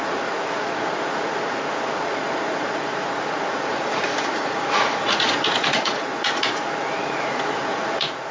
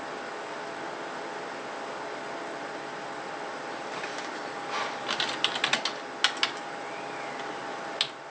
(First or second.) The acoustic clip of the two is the second